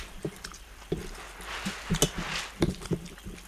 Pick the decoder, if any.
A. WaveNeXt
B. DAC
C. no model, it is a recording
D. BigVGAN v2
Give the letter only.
C